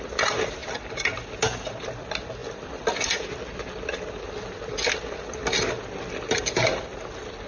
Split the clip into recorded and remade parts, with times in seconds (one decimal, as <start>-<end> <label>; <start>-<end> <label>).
0.0-7.5 recorded